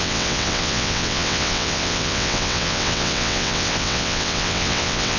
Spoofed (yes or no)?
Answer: yes